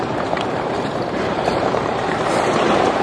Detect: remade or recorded remade